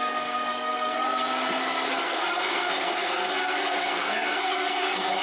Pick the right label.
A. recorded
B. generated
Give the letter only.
B